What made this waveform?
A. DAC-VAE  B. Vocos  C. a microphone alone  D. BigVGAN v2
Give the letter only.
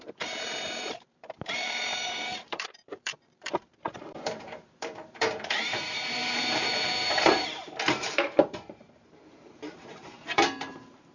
D